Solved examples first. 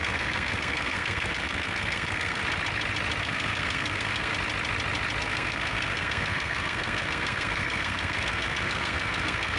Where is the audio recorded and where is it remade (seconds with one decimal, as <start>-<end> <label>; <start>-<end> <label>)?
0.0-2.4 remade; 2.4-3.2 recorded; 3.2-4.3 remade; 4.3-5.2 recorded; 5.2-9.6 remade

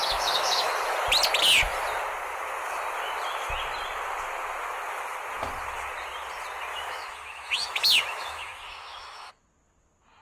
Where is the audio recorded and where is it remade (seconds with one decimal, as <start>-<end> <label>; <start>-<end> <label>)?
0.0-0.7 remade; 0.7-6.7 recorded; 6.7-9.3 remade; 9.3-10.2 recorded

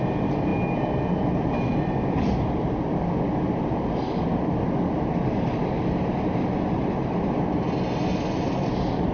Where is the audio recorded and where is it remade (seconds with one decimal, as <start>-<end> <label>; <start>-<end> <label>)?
0.0-9.1 recorded

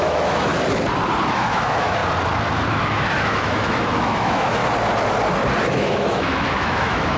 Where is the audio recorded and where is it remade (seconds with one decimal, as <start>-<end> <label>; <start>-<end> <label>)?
0.0-0.5 remade; 0.5-1.3 recorded; 1.3-2.0 remade; 2.0-2.7 recorded; 2.7-4.6 remade; 4.6-5.6 recorded; 5.6-7.2 remade

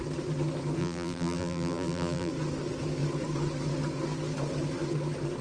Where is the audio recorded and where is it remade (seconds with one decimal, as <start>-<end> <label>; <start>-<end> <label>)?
0.0-0.8 recorded; 0.8-2.3 remade; 2.3-5.4 recorded

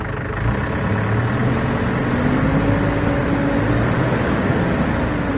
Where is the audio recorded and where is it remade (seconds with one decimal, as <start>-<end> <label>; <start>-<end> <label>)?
0.0-5.4 recorded

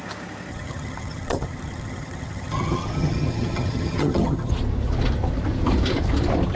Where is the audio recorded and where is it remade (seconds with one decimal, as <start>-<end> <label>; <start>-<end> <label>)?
0.0-0.5 recorded; 0.5-4.5 remade; 4.5-6.6 recorded

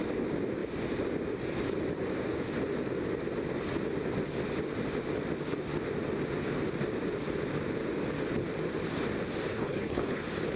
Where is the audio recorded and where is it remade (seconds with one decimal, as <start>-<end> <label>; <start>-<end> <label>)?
0.0-9.5 recorded; 9.5-10.2 remade; 10.2-10.6 recorded